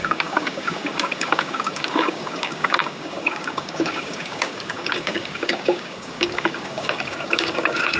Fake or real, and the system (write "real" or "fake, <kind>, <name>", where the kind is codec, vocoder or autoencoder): fake, codec, DAC